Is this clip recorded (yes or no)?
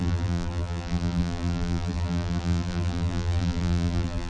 no